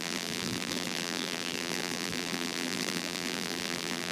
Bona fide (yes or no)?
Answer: no